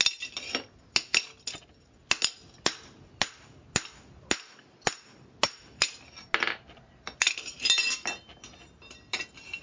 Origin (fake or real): real